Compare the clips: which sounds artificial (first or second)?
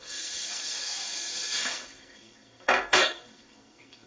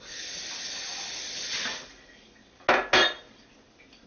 first